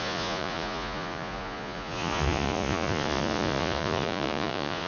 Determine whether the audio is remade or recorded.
remade